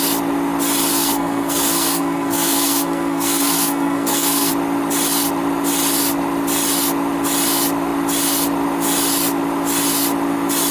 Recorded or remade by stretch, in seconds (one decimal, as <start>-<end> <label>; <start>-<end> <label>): 0.0-0.9 recorded; 0.9-4.5 remade; 4.5-10.7 recorded

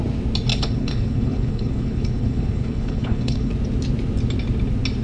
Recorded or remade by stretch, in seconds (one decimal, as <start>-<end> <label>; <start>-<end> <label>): 0.0-0.5 recorded; 0.5-3.5 remade; 3.5-5.0 recorded